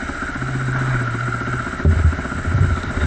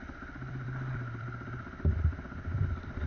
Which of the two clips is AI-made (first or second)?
second